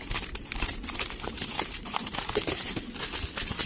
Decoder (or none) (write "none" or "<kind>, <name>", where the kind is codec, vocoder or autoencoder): vocoder, BigVGAN v2